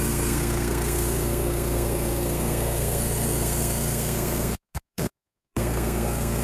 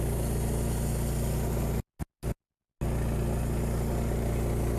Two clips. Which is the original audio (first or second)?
second